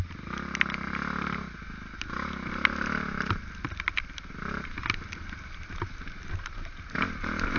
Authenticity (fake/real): real